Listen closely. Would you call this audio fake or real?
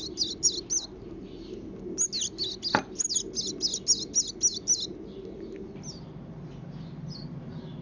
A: real